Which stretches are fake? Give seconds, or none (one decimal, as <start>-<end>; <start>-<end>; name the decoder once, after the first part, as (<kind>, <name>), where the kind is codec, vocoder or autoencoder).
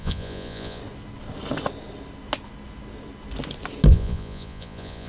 0.0-0.8 (vocoder, Vocos); 3.9-5.1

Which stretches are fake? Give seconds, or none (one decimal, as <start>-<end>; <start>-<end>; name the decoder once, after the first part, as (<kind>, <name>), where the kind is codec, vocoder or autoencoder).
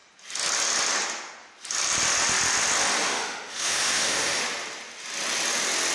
3.0-4.4 (autoencoder, DAC-VAE)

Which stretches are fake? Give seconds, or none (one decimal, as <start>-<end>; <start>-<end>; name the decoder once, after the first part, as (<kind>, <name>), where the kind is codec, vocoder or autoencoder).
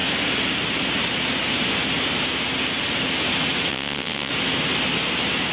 3.7-4.3 (vocoder, WaveNeXt)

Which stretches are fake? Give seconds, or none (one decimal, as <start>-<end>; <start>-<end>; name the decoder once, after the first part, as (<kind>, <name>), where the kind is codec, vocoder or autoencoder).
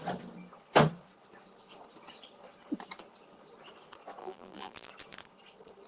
4.2-4.9 (vocoder, BigVGAN v2)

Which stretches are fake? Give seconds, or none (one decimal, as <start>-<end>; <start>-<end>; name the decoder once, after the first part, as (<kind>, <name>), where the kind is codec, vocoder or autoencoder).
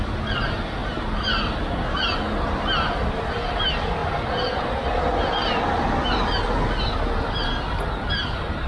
none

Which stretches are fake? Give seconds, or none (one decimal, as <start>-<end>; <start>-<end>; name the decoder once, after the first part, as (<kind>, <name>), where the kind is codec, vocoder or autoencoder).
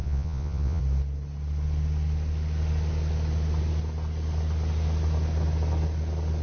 0.0-0.8 (vocoder, Vocos)